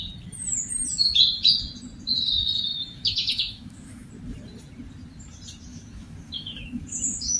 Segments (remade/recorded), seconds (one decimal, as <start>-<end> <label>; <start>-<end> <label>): 0.0-2.7 recorded; 2.7-4.1 remade; 4.1-5.7 recorded; 5.7-6.8 remade; 6.8-7.4 recorded